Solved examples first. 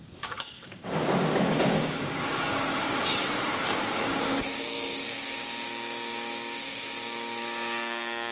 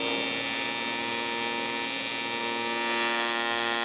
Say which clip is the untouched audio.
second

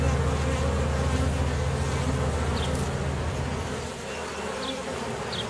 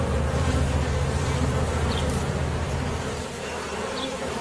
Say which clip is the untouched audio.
first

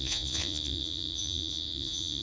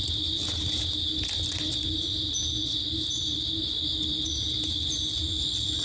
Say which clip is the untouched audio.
second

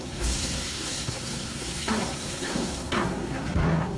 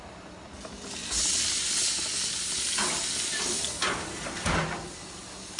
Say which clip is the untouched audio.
second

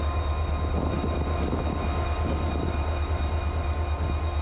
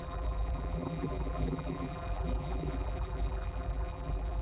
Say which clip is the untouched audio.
first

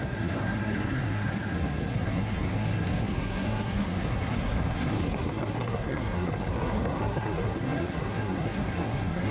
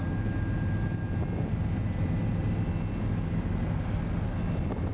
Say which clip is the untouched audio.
second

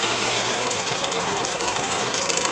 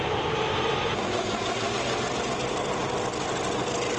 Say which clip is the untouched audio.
second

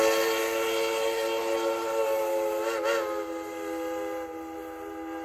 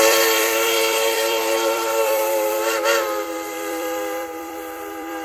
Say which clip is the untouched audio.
first